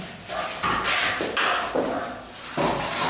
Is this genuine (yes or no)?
yes